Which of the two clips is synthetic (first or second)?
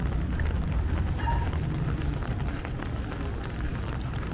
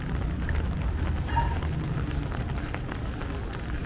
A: first